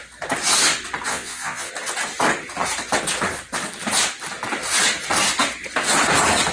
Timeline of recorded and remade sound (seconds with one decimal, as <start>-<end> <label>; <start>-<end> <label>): 0.0-1.1 recorded; 1.1-1.7 remade; 1.7-6.5 recorded